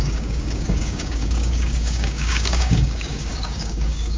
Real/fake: fake